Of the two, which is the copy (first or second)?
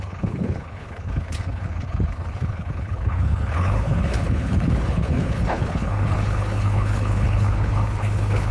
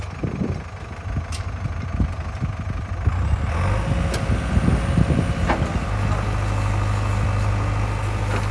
first